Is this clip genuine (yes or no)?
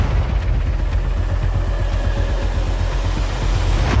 yes